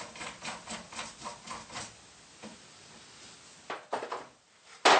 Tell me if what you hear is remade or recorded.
recorded